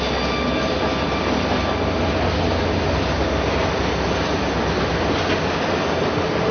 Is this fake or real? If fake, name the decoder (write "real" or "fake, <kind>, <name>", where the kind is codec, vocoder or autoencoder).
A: real